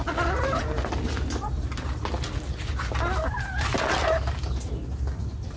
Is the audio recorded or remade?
recorded